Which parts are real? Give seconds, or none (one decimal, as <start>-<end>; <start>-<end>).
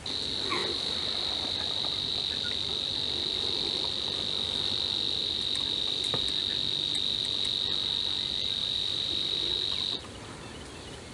0.0-0.6; 2.1-5.2; 6.2-8.6; 9.5-11.1